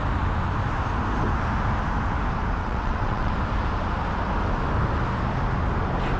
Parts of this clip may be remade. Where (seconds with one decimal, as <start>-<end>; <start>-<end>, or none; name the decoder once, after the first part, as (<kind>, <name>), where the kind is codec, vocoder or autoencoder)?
2.6-3.3 (vocoder, WaveNeXt)